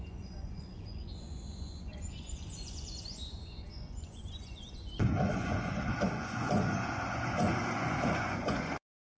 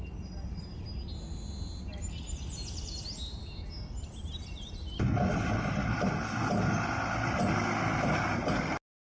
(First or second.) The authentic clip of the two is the second